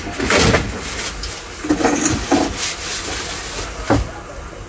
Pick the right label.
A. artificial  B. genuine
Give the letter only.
B